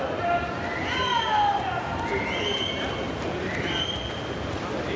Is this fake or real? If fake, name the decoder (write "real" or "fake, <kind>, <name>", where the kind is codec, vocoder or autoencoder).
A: real